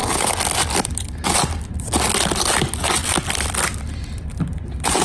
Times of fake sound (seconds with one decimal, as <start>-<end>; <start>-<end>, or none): none